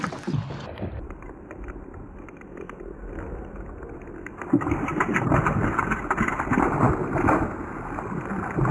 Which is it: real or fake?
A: real